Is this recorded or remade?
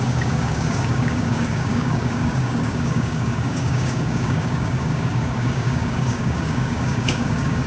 remade